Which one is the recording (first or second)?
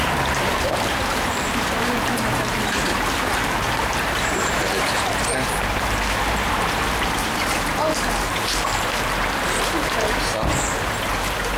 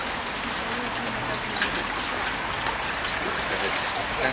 second